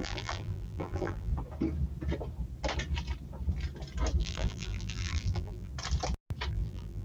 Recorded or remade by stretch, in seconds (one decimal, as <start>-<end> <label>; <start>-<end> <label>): 0.0-1.3 remade; 1.3-4.2 recorded; 4.2-5.7 remade; 5.7-6.5 recorded; 6.5-7.0 remade